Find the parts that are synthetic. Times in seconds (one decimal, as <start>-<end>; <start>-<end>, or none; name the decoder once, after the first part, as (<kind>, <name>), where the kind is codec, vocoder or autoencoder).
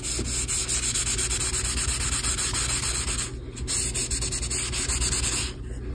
none